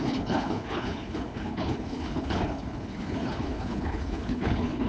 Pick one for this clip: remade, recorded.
remade